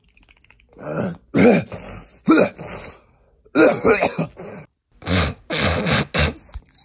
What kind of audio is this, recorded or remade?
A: recorded